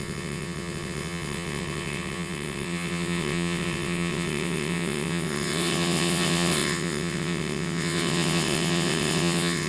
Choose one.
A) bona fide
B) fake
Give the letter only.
B